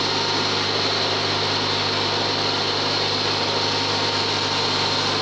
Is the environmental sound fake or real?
real